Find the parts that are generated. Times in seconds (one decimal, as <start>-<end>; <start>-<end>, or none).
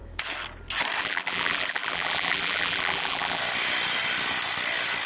1.0-3.4